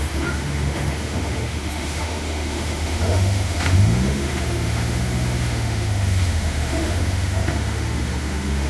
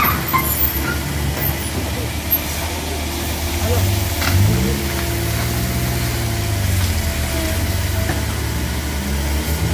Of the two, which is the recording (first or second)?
second